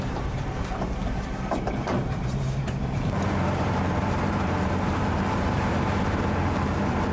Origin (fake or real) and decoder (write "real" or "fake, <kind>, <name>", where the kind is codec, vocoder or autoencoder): fake, vocoder, BigVGAN v2